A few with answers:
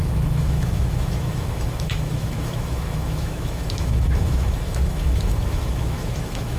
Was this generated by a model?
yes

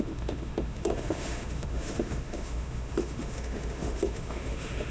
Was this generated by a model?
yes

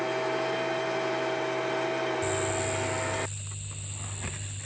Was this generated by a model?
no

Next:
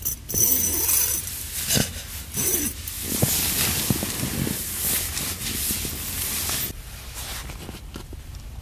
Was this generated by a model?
no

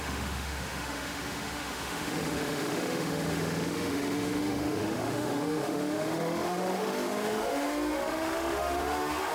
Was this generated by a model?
yes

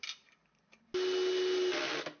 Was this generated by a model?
no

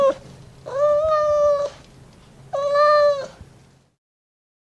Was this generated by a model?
no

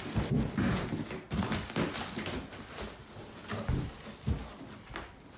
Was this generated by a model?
no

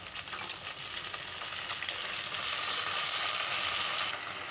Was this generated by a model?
no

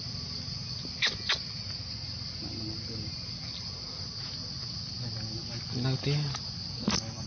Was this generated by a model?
no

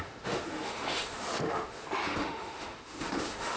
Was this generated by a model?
yes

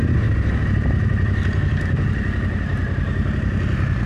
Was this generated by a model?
no